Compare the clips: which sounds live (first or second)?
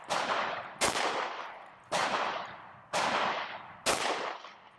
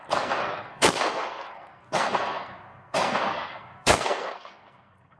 first